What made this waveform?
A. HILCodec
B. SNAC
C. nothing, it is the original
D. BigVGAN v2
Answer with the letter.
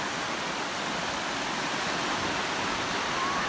C